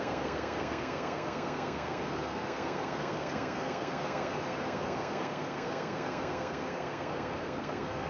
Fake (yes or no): yes